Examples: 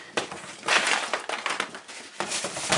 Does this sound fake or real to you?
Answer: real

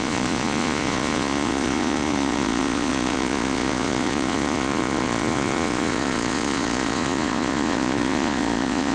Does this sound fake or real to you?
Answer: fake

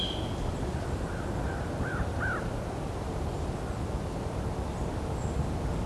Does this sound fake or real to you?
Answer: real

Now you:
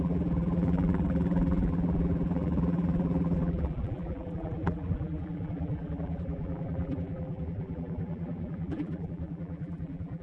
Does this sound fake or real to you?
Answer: fake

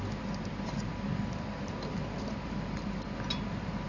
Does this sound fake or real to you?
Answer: real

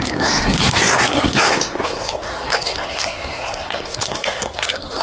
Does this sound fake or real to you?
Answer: fake